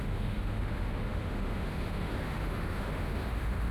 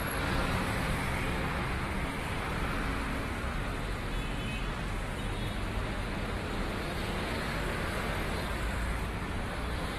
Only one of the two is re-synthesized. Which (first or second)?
first